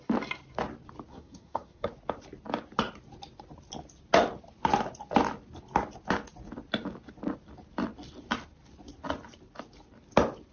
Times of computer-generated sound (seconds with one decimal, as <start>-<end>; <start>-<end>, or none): 1.1-1.9